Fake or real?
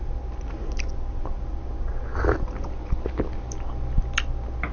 real